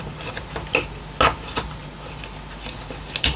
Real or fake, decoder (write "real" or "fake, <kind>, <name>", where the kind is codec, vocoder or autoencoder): real